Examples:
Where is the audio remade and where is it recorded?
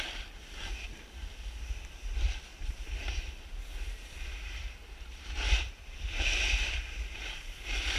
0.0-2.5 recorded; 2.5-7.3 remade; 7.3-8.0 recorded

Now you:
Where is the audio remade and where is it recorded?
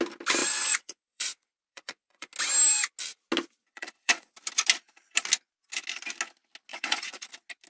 0.0-0.4 recorded; 0.4-2.3 remade; 2.3-3.6 recorded; 3.6-4.3 remade; 4.3-6.7 recorded; 6.7-7.3 remade; 7.3-7.7 recorded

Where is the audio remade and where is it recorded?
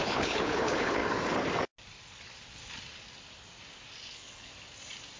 0.0-1.0 remade; 1.0-4.1 recorded; 4.1-4.5 remade; 4.5-5.2 recorded